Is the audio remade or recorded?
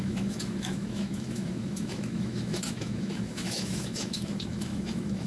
remade